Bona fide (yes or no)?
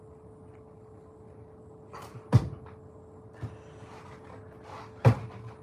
yes